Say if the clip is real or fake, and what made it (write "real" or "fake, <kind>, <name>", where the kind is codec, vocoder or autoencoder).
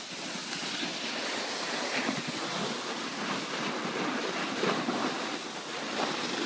real